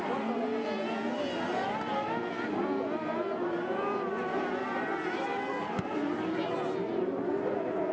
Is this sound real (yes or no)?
yes